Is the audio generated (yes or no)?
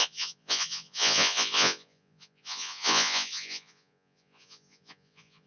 yes